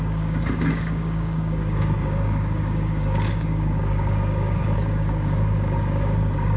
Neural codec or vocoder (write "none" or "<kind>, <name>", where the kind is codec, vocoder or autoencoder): codec, DAC